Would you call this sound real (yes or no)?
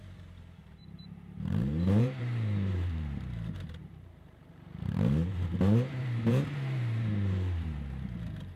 no